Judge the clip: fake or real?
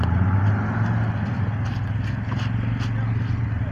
real